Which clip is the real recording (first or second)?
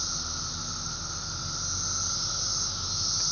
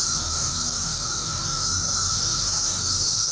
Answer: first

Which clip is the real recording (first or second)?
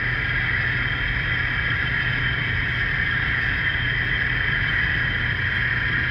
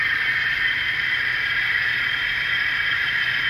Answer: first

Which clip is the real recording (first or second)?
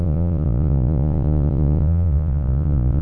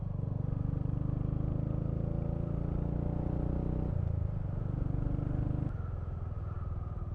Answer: second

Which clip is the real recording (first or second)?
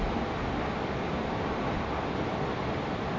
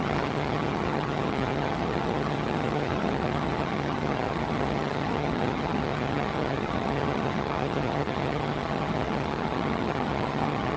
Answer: first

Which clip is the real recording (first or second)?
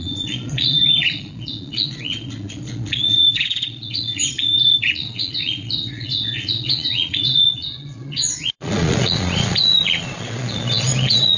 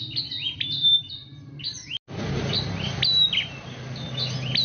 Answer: second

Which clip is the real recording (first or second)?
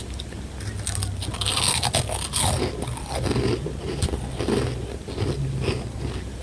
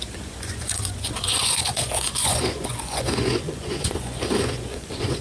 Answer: first